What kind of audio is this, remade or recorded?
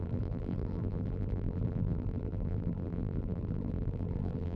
remade